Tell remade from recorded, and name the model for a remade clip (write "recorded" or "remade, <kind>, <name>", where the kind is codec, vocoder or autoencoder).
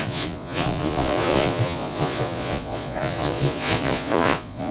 remade, vocoder, Vocos